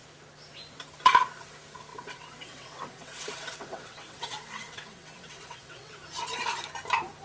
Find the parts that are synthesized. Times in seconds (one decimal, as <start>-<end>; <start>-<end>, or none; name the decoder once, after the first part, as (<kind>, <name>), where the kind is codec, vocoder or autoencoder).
1.9-5.9 (vocoder, WaveNeXt)